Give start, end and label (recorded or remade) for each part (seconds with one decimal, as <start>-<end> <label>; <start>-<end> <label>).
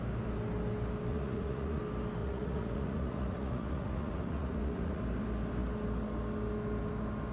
0.0-1.1 recorded; 1.1-1.8 remade; 1.8-2.2 recorded; 2.2-5.0 remade; 5.0-7.3 recorded